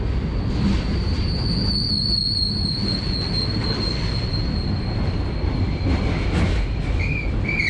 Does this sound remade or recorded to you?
recorded